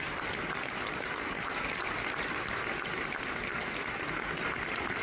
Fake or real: real